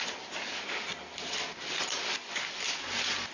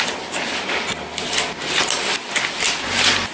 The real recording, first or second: first